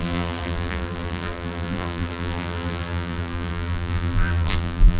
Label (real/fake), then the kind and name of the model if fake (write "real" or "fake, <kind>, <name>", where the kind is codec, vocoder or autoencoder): fake, vocoder, BigVGAN v2